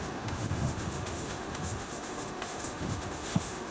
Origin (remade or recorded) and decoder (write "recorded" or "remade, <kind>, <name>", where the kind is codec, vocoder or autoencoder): remade, autoencoder, DAC-VAE